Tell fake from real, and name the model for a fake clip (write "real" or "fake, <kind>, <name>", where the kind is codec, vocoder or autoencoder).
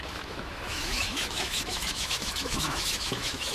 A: fake, autoencoder, DAC-VAE